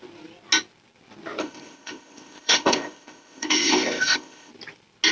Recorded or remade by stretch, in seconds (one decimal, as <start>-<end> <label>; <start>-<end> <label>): 0.0-1.4 recorded; 1.4-4.5 remade; 4.5-5.1 recorded